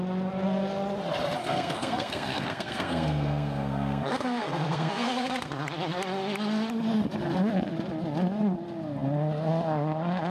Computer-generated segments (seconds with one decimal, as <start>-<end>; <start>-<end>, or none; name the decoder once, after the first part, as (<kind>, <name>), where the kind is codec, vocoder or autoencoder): 1.4-5.5 (codec, SNAC)